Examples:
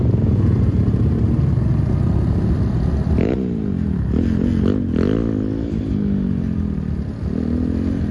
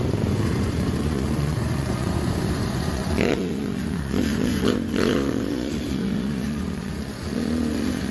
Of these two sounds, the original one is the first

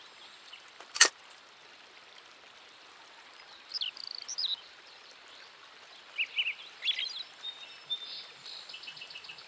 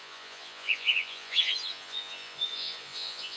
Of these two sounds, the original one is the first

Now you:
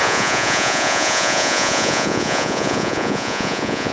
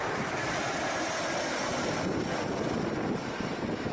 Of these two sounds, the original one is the second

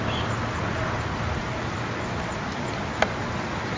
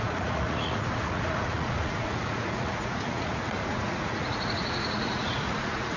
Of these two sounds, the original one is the first